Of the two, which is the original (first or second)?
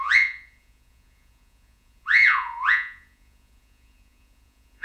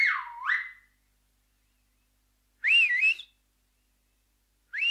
second